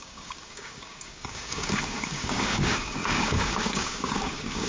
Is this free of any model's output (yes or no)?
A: no